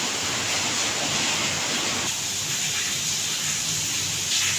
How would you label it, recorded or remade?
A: recorded